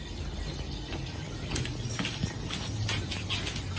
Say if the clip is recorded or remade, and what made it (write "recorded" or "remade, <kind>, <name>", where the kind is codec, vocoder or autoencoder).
recorded